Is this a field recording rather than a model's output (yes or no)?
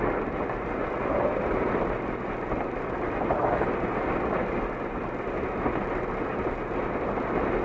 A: yes